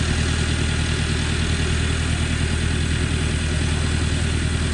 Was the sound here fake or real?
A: real